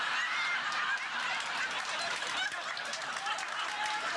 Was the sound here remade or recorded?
recorded